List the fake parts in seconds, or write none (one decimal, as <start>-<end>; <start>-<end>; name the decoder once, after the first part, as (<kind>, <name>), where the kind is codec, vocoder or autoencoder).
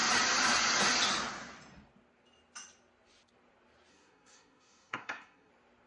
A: 3.9-5.5 (codec, SNAC)